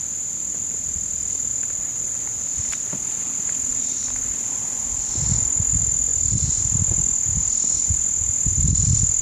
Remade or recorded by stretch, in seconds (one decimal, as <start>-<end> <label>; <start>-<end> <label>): 0.0-9.2 recorded